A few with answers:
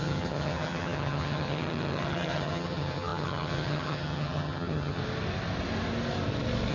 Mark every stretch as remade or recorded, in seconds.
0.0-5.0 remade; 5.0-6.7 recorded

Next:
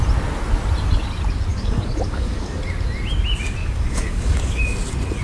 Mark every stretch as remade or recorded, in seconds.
0.0-1.5 recorded; 1.5-2.6 remade; 2.6-3.6 recorded; 3.6-4.6 remade; 4.6-5.2 recorded

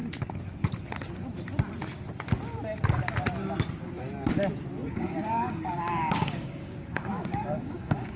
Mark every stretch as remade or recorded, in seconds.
0.0-4.8 recorded; 4.8-8.2 remade

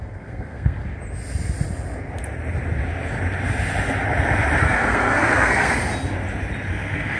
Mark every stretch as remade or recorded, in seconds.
0.0-0.8 remade; 0.8-4.6 recorded; 4.6-5.8 remade; 5.8-6.7 recorded; 6.7-7.2 remade

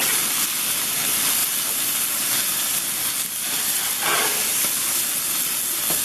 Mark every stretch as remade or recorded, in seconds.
0.0-6.0 recorded

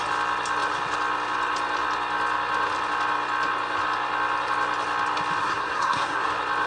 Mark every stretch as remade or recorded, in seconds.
0.0-5.4 recorded; 5.4-6.3 remade; 6.3-6.7 recorded